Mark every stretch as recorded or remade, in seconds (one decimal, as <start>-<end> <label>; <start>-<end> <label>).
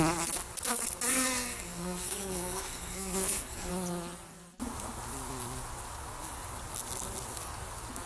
0.0-1.1 recorded; 1.1-3.7 remade; 3.7-8.1 recorded